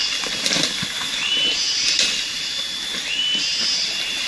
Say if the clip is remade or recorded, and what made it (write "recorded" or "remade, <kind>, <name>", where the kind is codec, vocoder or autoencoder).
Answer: recorded